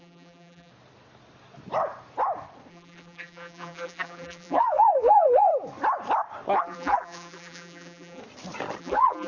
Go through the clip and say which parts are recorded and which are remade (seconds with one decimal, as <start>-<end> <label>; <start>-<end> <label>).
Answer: 0.0-0.7 remade; 0.7-2.7 recorded; 2.7-5.5 remade; 5.5-6.6 recorded; 6.6-8.2 remade; 8.2-8.8 recorded; 8.8-9.3 remade